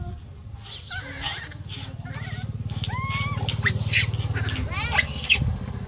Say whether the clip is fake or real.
real